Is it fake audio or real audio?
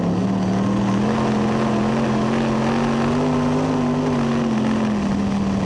real